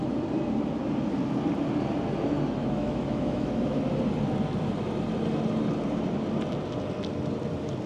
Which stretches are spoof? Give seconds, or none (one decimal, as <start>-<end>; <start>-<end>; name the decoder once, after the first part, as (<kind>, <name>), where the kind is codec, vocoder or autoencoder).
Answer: 2.6-3.8 (autoencoder, DAC-VAE)